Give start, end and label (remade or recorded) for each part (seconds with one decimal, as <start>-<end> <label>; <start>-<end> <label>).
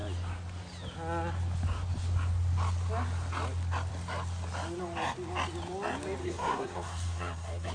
0.0-6.2 recorded; 6.2-7.7 remade